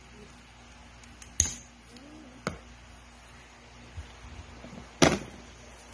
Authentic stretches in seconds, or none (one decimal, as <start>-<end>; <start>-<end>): 0.0-5.9